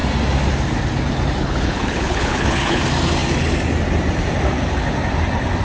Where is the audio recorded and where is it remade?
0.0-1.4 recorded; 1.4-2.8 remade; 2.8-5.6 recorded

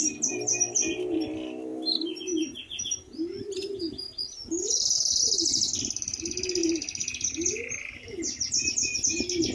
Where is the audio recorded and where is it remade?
0.0-9.5 recorded

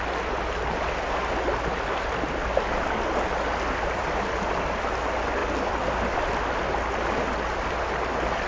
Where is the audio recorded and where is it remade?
0.0-5.4 recorded; 5.4-6.3 remade; 6.3-8.5 recorded

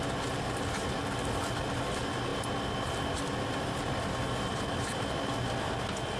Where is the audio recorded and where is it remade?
0.0-6.2 recorded

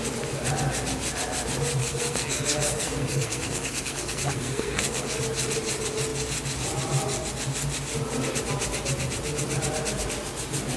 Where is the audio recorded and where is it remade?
0.0-1.8 recorded; 1.8-5.2 remade; 5.2-10.8 recorded

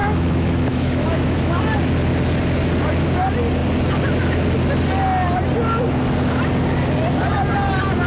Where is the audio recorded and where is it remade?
0.0-1.6 remade; 1.6-8.1 recorded

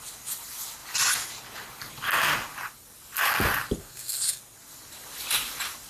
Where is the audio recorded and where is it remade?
0.0-3.8 recorded; 3.8-4.4 remade; 4.4-5.9 recorded

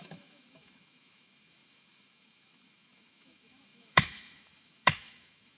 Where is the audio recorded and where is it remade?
0.0-5.6 remade